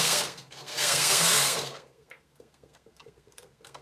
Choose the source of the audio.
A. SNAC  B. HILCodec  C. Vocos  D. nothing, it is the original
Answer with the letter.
A